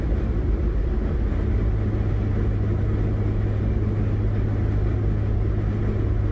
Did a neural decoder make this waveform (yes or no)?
no